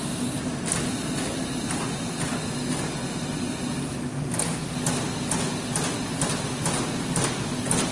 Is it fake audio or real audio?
real